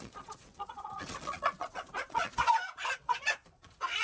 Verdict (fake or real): fake